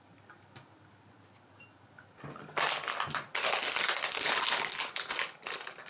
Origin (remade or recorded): recorded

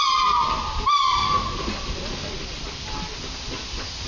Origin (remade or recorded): recorded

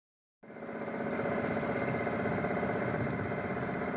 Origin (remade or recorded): recorded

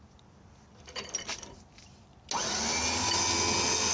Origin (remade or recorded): recorded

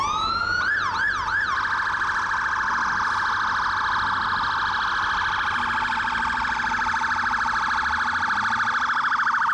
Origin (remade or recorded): recorded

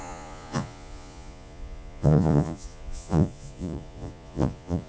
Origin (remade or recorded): remade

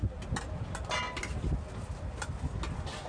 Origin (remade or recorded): recorded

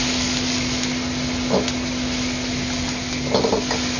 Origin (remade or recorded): recorded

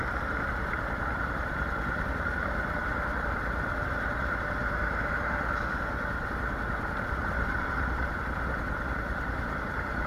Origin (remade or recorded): recorded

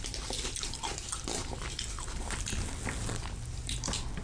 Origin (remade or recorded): recorded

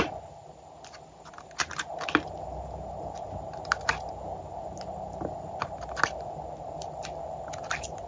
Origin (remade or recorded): recorded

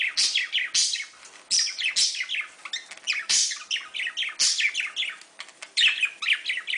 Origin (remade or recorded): recorded